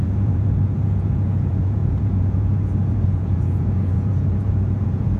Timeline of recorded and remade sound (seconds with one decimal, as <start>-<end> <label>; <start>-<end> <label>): 0.0-5.2 remade